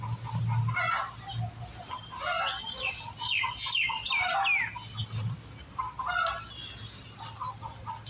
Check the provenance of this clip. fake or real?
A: real